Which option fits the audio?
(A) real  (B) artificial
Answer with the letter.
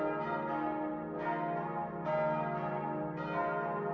A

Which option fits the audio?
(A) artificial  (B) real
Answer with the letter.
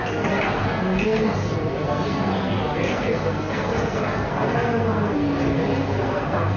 A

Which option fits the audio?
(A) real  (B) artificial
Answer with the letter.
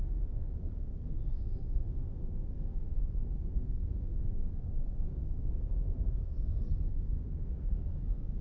B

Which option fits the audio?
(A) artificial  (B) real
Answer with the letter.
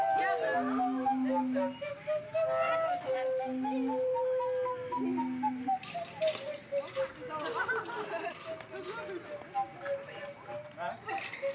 B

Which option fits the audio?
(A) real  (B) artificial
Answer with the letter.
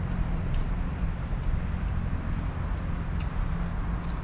A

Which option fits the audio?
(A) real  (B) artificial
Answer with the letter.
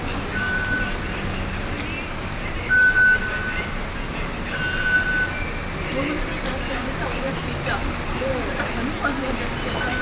A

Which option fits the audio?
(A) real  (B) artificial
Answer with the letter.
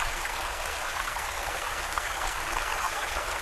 B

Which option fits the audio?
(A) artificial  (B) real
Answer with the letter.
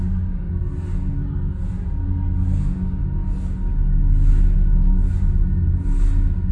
B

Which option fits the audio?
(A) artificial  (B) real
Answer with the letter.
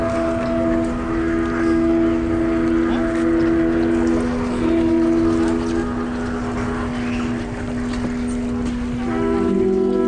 B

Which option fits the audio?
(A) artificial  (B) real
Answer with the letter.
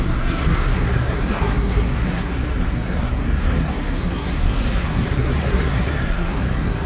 A